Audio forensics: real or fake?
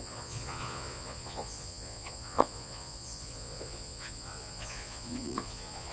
fake